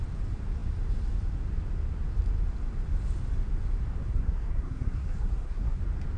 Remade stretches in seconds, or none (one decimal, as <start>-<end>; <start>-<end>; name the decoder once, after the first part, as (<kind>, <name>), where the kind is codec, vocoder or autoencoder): 4.0-5.8 (codec, SNAC)